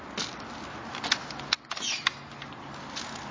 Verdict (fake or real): real